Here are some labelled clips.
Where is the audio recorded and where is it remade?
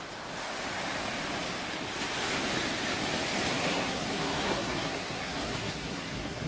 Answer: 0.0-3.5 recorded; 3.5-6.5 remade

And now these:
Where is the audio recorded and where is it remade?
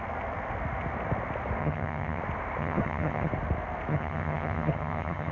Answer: 0.0-1.6 recorded; 1.6-2.2 remade; 2.2-2.6 recorded; 2.6-3.3 remade; 3.3-3.9 recorded; 3.9-5.3 remade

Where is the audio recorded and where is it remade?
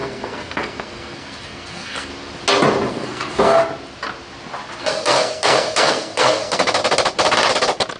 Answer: 0.0-2.1 remade; 2.1-2.9 recorded; 2.9-3.6 remade; 3.6-4.8 recorded; 4.8-6.8 remade; 6.8-8.0 recorded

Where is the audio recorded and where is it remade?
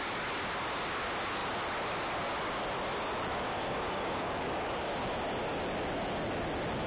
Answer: 0.0-3.3 recorded; 3.3-4.9 remade; 4.9-6.9 recorded